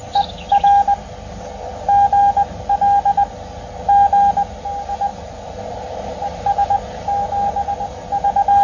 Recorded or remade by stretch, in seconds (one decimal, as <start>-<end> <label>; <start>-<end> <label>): 0.0-8.6 recorded